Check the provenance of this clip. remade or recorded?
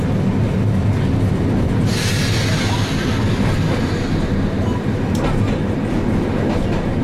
recorded